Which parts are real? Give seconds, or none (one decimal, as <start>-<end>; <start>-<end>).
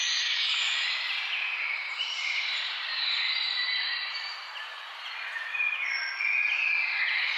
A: 0.0-1.8; 5.8-7.4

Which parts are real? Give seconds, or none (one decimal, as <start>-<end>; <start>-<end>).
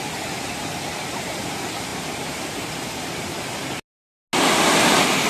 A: 0.0-1.9; 3.2-5.3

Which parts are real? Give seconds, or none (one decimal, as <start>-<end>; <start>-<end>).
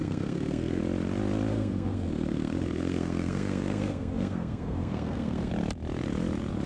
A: 0.8-1.5; 5.5-6.7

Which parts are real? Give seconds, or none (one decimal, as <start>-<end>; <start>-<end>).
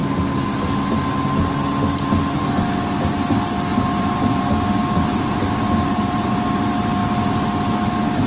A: 0.0-3.7; 4.5-5.1; 6.3-7.0; 7.7-8.3